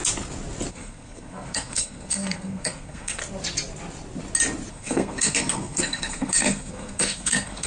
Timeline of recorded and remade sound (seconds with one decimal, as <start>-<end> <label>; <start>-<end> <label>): 0.0-0.7 recorded; 0.7-3.2 remade; 3.2-4.7 recorded; 4.7-7.7 remade